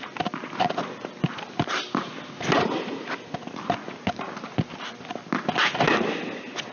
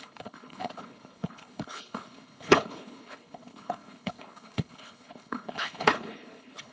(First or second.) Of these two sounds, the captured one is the first